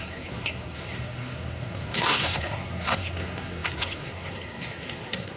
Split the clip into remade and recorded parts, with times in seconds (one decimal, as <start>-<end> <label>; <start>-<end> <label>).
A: 0.0-5.4 remade